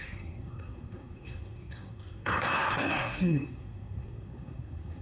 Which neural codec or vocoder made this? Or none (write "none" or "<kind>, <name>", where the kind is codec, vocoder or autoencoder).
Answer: codec, SNAC